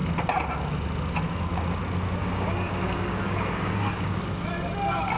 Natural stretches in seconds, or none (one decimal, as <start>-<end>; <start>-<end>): 0.0-2.2; 4.5-5.2